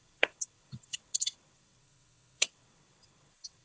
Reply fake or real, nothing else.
fake